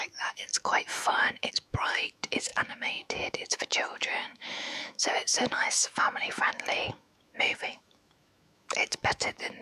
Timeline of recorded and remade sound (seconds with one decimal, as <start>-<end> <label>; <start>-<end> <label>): 0.0-9.6 remade